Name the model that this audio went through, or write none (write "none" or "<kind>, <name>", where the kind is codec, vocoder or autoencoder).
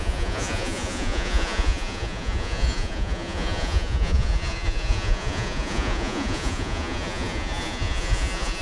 vocoder, Vocos